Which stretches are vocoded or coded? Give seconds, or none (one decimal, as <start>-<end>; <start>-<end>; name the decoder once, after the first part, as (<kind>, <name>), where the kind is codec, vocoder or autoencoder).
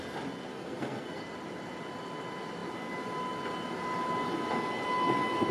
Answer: 0.5-1.2 (codec, SNAC)